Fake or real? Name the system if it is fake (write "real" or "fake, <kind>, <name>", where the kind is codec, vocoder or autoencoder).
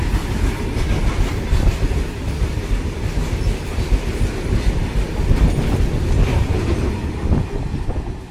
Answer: real